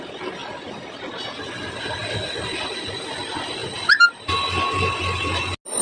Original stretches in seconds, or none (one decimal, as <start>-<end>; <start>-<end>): 0.0-5.8